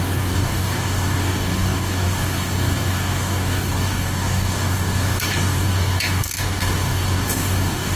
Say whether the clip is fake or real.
fake